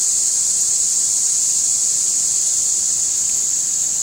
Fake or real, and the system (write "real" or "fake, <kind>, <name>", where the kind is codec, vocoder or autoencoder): real